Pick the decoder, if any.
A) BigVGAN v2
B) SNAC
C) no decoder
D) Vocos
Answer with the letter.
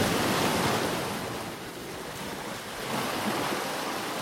C